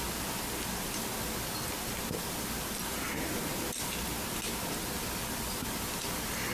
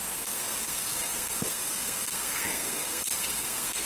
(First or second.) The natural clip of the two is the first